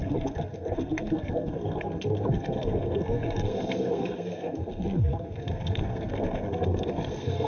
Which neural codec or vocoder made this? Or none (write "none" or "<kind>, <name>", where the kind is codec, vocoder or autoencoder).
codec, SNAC